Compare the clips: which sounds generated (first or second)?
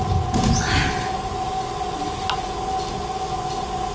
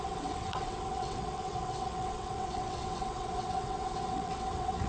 second